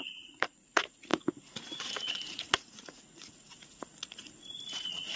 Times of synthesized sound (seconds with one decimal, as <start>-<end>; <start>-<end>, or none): 0.0-5.2